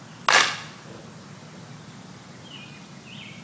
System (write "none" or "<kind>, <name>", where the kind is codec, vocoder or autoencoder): none